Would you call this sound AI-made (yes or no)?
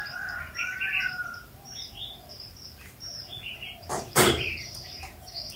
yes